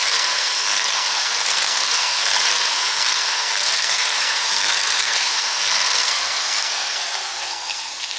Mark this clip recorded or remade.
remade